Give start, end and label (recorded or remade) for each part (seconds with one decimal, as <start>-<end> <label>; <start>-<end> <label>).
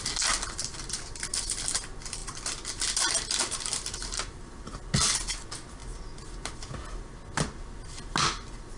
0.0-8.8 recorded